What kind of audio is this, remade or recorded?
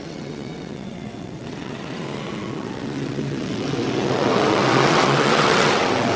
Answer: remade